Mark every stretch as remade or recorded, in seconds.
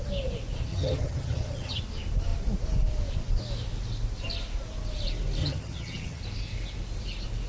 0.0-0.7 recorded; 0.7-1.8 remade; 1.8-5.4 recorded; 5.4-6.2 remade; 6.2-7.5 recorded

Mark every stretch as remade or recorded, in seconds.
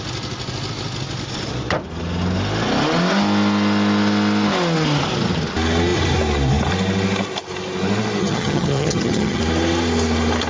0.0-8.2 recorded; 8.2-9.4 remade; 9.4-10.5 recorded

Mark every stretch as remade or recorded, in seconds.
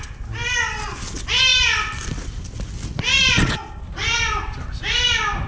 0.0-5.5 recorded